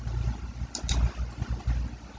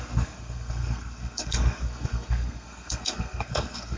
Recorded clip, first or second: first